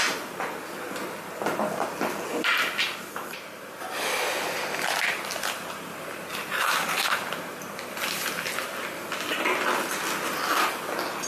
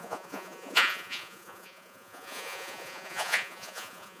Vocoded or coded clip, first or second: second